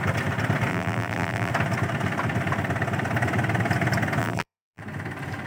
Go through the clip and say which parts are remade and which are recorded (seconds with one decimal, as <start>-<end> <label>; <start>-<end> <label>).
0.0-0.7 recorded; 0.7-1.5 remade; 1.5-4.2 recorded; 4.2-4.8 remade; 4.8-5.5 recorded